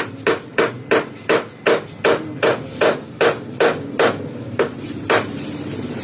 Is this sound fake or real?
real